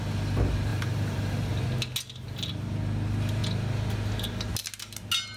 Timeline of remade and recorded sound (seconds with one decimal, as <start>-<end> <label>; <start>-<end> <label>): 0.0-0.7 recorded; 0.7-1.5 remade; 1.5-5.4 recorded